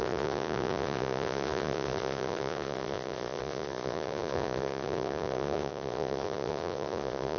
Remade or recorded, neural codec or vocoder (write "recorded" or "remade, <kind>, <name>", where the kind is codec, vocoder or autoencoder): remade, vocoder, Vocos